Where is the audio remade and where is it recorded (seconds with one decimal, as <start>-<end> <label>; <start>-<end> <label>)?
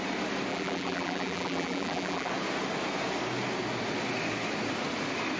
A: 0.0-0.5 recorded; 0.5-2.3 remade; 2.3-5.4 recorded